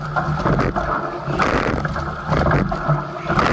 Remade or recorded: recorded